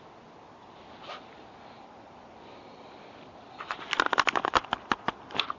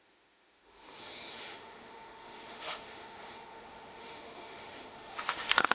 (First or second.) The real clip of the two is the first